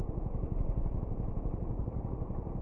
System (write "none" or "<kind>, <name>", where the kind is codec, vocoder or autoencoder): none